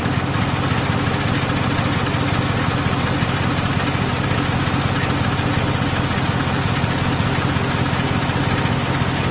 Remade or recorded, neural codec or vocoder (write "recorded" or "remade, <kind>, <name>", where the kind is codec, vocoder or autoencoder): recorded